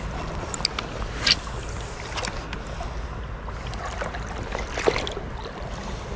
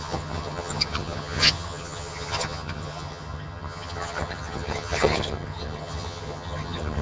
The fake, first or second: second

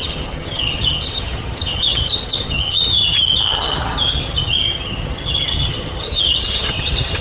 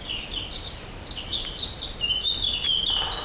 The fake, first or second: first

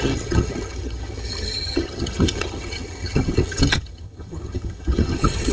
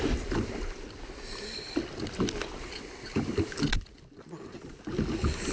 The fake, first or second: first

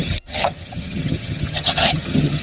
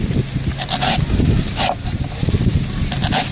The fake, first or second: first